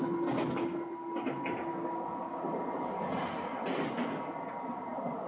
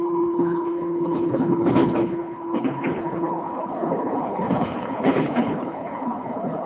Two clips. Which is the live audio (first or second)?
first